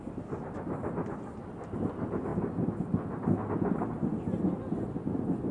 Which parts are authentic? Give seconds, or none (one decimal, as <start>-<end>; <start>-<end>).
0.0-5.5